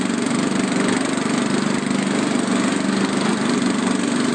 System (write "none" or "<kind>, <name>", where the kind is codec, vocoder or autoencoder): none